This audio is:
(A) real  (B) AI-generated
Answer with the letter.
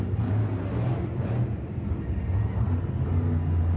A